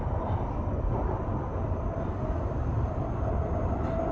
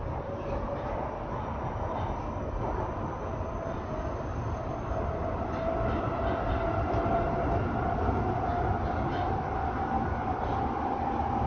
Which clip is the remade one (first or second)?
first